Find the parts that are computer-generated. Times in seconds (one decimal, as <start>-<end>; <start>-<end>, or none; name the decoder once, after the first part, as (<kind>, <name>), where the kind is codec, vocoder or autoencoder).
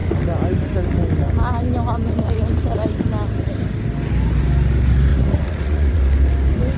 5.1-6.0 (vocoder, Vocos)